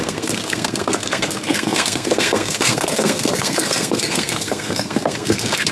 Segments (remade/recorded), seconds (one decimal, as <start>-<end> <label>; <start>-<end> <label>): 0.0-5.7 remade